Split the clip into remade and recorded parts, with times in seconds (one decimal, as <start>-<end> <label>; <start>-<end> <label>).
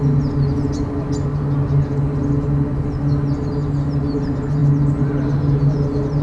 0.0-6.2 recorded